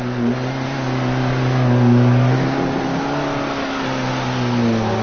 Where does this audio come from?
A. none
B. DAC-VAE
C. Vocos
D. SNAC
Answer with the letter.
A